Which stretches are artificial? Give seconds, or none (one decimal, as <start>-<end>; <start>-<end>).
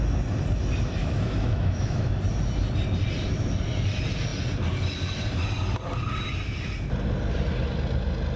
1.0-2.2